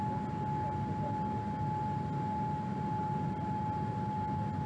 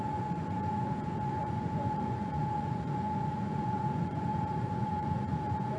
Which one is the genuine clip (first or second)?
first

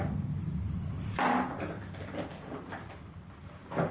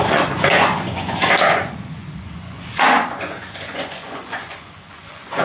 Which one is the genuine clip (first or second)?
first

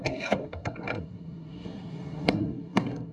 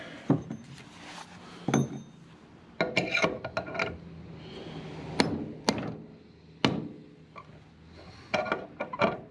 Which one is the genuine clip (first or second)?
second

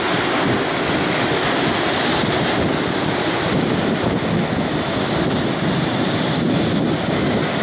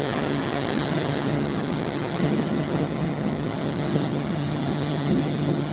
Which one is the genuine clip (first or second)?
first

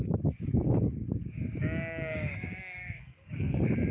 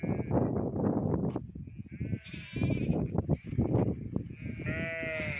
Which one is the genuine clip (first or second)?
second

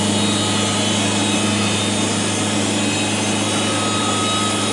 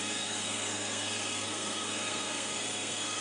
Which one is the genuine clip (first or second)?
first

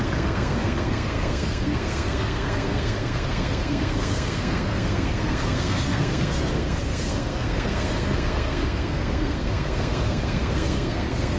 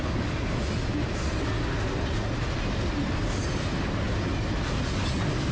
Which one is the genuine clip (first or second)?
second